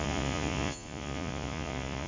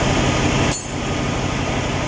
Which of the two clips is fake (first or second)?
first